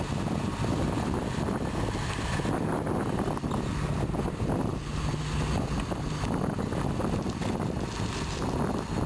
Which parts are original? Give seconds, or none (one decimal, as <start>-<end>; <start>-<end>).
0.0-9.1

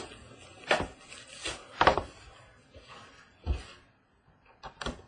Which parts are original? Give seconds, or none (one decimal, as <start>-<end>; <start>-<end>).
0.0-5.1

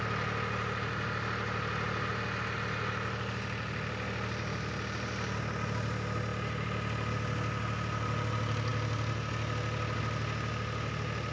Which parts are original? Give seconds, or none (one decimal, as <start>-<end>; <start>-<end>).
0.0-11.3